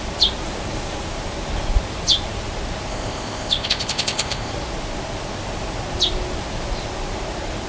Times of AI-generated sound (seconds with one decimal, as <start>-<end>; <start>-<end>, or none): 2.9-4.5

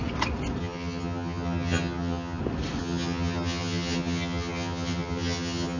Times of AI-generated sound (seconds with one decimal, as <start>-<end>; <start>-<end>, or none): 0.6-2.4; 2.8-5.8